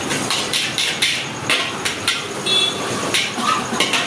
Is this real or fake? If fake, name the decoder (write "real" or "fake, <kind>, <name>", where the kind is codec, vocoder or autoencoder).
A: fake, vocoder, BigVGAN v2